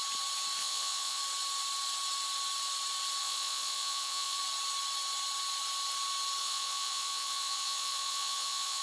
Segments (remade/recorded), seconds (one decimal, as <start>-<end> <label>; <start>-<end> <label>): 0.0-0.6 recorded; 0.6-1.2 remade; 1.2-3.2 recorded; 3.2-4.4 remade; 4.4-6.4 recorded; 6.4-8.8 remade